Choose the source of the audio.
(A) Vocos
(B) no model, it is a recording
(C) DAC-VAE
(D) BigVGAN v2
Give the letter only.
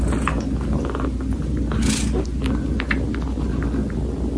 B